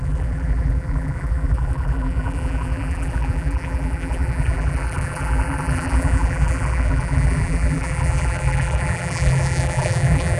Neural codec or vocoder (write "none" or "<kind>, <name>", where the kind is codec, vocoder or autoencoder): vocoder, BigVGAN v2